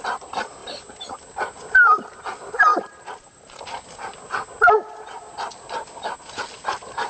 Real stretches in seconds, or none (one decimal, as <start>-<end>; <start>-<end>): 0.0-2.7; 3.6-7.1